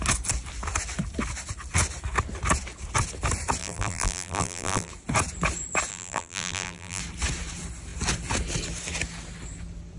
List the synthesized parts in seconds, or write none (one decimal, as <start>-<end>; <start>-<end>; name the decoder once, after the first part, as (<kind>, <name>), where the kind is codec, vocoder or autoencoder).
3.6-4.9 (vocoder, BigVGAN v2); 5.9-7.0